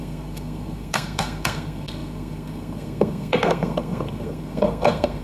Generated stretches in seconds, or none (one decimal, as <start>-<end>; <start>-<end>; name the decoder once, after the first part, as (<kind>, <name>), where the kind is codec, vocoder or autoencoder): 0.0-5.2 (codec, SNAC)